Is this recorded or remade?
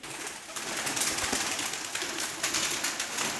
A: recorded